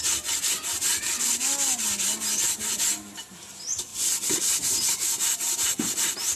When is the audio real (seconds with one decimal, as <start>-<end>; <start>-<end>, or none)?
0.0-6.4